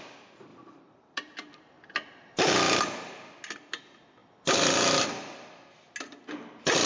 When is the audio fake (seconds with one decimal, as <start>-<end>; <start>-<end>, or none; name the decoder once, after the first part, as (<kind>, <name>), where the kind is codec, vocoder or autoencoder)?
0.5-2.5 (vocoder, BigVGAN v2)